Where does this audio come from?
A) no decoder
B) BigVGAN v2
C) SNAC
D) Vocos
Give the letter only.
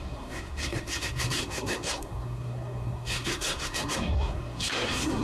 C